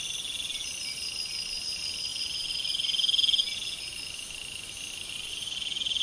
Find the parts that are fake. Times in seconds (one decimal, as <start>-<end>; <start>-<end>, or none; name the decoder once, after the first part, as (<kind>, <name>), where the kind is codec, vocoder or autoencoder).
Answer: none